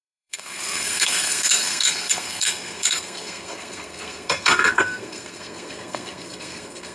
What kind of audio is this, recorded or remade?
remade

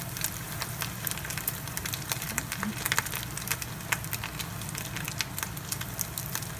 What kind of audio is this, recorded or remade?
recorded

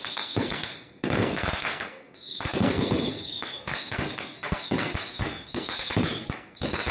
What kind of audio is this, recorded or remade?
remade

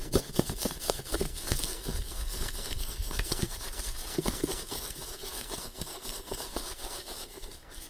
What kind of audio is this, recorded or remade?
remade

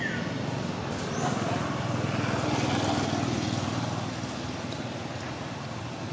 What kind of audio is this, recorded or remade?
recorded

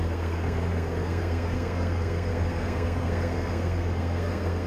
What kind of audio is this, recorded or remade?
remade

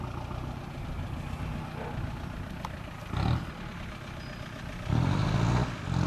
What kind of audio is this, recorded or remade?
recorded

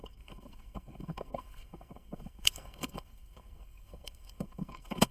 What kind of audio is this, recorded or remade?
remade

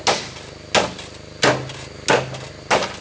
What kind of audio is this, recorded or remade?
recorded